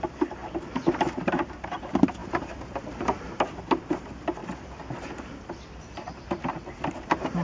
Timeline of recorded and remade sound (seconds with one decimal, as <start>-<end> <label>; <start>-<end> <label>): 0.0-4.4 remade; 4.4-4.9 recorded; 4.9-7.4 remade